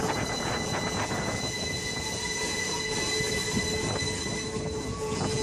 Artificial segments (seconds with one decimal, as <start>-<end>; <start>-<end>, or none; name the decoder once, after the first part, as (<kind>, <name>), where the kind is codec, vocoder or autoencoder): 0.0-3.1 (vocoder, Vocos); 4.8-5.4